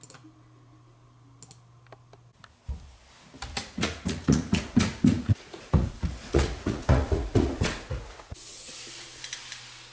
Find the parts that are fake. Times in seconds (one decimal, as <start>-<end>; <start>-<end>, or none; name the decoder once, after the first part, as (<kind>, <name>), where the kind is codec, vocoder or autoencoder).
3.6-8.7 (vocoder, Vocos)